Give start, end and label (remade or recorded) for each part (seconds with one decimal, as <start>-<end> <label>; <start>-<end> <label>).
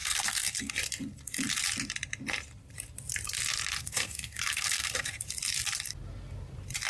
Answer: 0.0-0.7 remade; 0.7-3.8 recorded; 3.8-5.2 remade; 5.2-6.9 recorded